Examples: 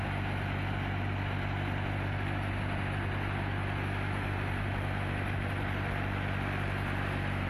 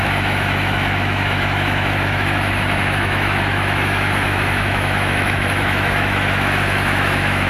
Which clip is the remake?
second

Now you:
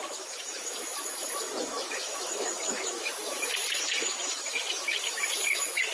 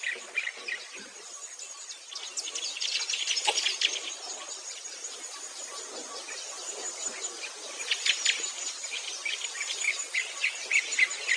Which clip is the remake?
first